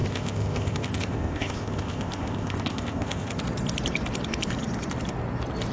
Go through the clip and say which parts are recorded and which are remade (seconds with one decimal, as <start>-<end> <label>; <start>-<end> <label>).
0.0-3.4 remade; 3.4-5.7 recorded